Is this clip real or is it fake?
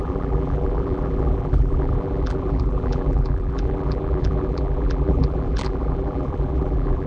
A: fake